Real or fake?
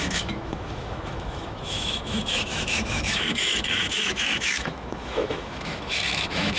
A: fake